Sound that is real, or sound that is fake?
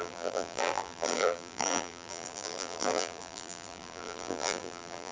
fake